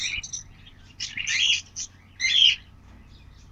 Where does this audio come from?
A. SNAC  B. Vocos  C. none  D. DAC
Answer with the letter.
C